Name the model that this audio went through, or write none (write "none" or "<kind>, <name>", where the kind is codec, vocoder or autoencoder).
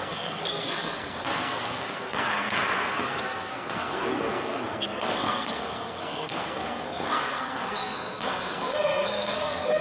codec, SNAC